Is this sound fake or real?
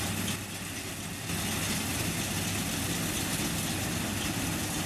real